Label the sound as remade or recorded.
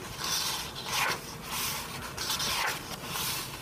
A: recorded